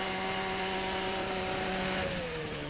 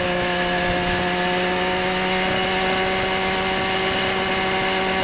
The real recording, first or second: second